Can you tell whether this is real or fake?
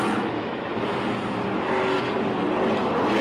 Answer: real